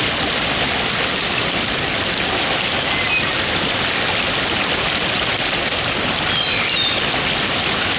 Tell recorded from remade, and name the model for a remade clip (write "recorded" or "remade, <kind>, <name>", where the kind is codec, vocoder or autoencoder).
recorded